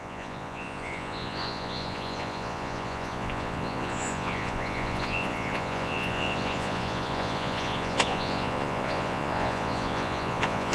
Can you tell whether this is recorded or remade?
remade